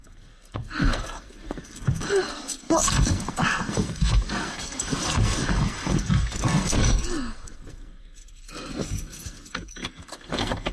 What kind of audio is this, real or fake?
fake